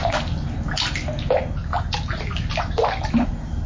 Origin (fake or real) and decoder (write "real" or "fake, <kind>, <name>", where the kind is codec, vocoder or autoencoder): real